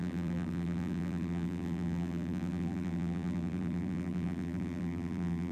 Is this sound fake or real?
fake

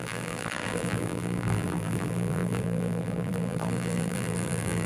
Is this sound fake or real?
fake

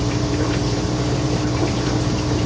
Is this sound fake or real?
fake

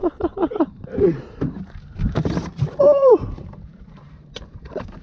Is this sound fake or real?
fake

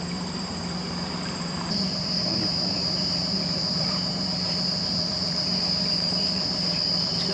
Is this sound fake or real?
fake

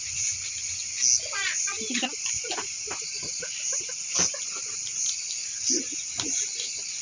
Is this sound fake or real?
real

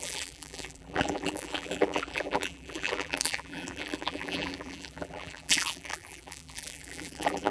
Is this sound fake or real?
fake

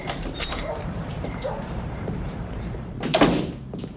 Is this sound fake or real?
fake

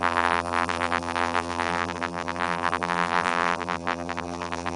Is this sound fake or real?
fake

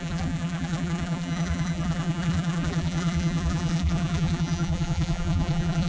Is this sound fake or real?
fake